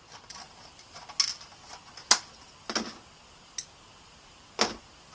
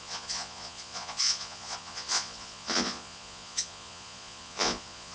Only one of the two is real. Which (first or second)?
first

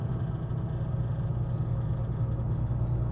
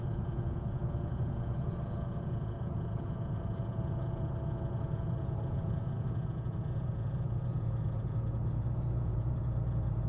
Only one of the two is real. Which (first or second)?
first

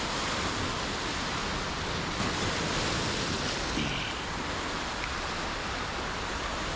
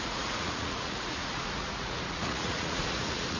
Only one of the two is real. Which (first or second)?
first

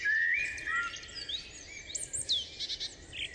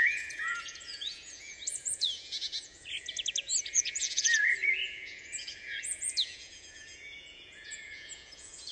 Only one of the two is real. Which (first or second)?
first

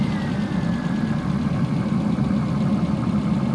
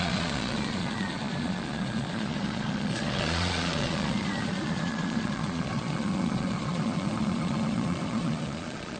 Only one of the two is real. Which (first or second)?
first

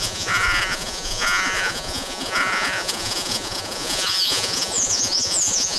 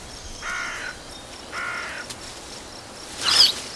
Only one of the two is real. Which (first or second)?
second